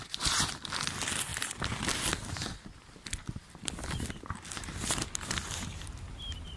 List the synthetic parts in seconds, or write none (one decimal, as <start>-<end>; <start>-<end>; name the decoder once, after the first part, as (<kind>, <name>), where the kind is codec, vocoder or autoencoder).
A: none